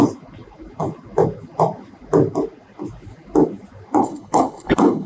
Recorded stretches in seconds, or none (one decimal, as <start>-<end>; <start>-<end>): 0.0-4.0